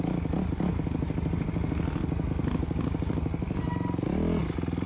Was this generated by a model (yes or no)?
no